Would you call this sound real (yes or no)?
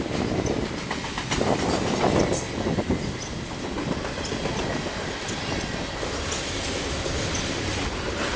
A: yes